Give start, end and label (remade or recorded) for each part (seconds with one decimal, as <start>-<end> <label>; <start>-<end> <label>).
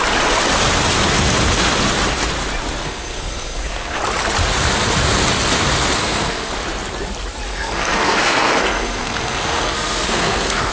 0.0-2.8 recorded; 2.8-4.0 remade; 4.0-6.0 recorded; 6.0-6.5 remade; 6.5-7.5 recorded; 7.5-10.7 remade